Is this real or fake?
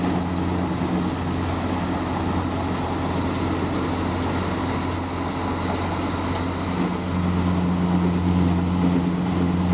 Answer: real